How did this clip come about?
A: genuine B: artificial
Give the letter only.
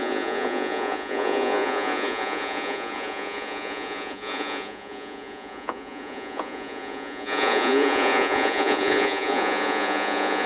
B